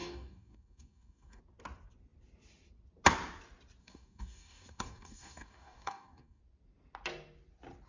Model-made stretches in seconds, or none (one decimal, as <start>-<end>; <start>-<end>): 0.0-1.4; 3.8-6.4